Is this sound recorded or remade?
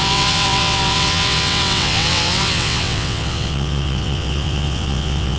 remade